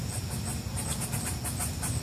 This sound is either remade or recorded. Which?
recorded